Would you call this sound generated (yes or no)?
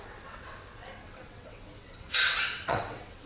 yes